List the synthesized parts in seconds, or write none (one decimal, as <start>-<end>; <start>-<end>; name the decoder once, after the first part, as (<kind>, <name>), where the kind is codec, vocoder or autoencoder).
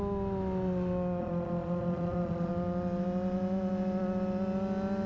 1.2-2.5 (vocoder, Vocos)